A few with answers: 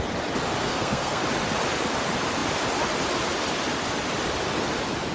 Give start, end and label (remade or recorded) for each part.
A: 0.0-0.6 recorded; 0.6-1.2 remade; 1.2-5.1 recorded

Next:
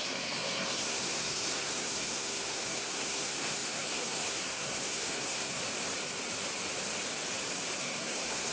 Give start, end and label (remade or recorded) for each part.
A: 0.0-5.6 remade; 5.6-7.8 recorded; 7.8-8.5 remade

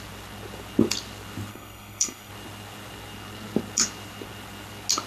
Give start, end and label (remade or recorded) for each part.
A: 0.0-1.5 recorded; 1.5-2.3 remade; 2.3-5.1 recorded

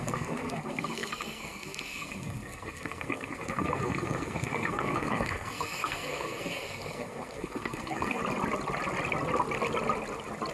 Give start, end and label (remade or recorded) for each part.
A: 0.0-8.2 remade; 8.2-10.5 recorded

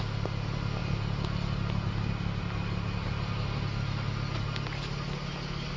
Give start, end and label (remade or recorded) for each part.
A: 0.0-5.8 recorded